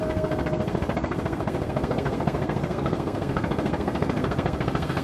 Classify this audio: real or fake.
fake